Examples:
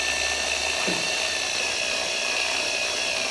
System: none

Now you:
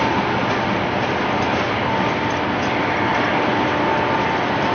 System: none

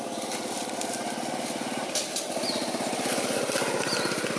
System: none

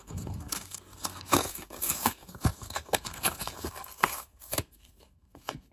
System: codec, SNAC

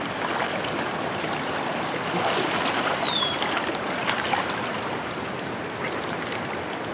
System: vocoder, BigVGAN v2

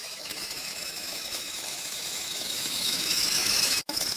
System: autoencoder, DAC-VAE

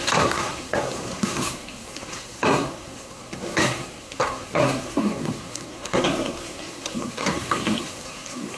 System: codec, SNAC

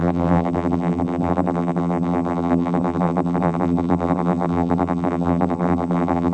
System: vocoder, BigVGAN v2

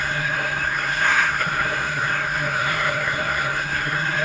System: codec, SNAC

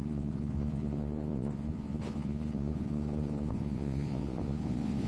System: vocoder, Vocos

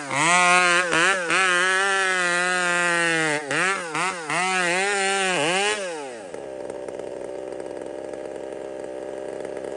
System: none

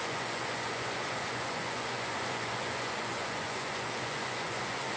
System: vocoder, Vocos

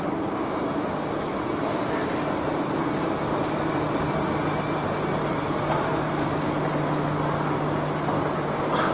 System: none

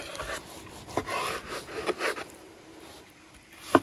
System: none